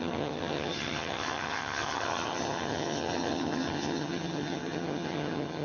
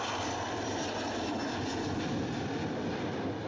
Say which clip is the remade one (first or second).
first